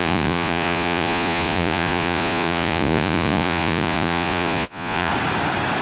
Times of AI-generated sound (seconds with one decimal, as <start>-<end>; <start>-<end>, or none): 0.0-5.1